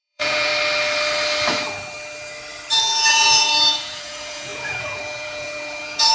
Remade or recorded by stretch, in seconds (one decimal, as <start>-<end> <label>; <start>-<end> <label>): 0.0-0.5 remade; 0.5-3.1 recorded; 3.1-6.1 remade